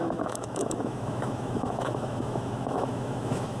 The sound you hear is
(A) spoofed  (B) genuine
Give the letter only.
A